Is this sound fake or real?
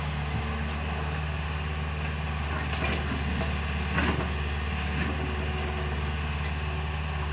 real